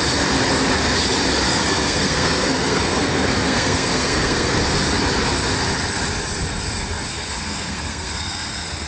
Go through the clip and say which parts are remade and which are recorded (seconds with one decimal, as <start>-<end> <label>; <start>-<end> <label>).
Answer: 0.0-1.5 recorded; 1.5-4.5 remade; 4.5-7.1 recorded; 7.1-8.9 remade